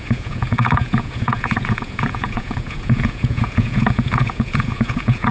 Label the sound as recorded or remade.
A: remade